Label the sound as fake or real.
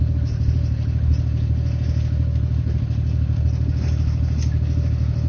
real